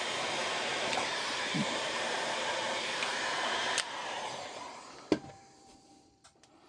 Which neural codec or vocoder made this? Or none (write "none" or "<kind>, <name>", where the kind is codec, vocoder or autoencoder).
vocoder, BigVGAN v2